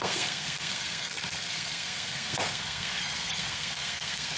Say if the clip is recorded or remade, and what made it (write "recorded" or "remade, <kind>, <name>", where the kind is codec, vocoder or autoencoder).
remade, codec, SNAC